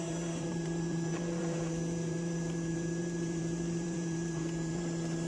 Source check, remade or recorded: remade